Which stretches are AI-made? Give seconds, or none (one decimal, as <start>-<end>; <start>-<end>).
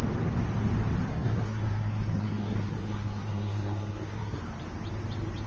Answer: 1.1-4.4